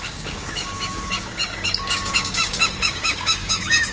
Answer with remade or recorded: remade